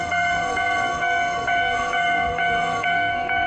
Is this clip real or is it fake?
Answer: fake